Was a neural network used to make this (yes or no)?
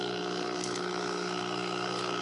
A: yes